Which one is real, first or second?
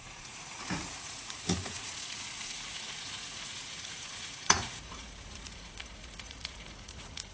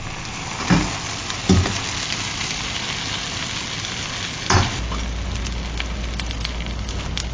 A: second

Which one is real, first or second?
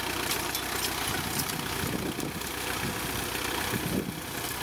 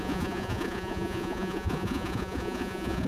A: first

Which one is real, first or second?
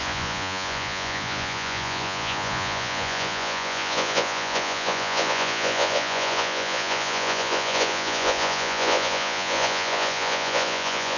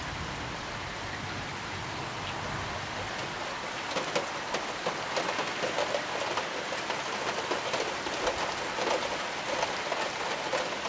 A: second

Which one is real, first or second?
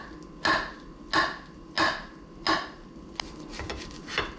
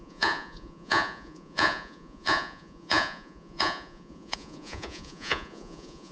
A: first